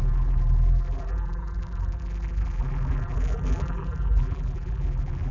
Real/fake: fake